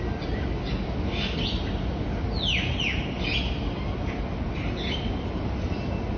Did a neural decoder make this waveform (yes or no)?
no